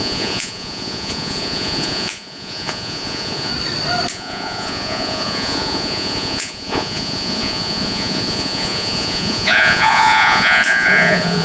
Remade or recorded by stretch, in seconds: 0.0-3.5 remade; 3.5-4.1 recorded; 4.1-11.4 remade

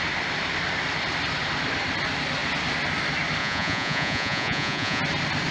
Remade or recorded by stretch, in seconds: 0.0-3.4 recorded; 3.4-5.0 remade; 5.0-5.5 recorded

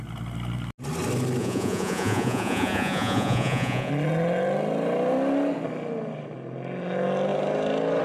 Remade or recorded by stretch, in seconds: 0.0-1.4 recorded; 1.4-3.9 remade; 3.9-8.0 recorded

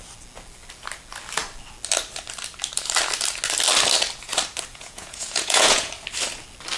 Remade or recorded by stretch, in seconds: 0.0-4.7 recorded; 4.7-5.9 remade; 5.9-6.8 recorded

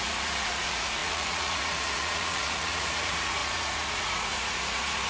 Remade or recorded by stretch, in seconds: 0.0-5.1 remade

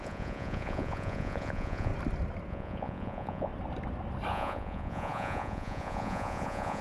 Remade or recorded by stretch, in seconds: 0.0-1.9 remade; 1.9-2.5 recorded; 2.5-3.5 remade; 3.5-4.3 recorded; 4.3-6.8 remade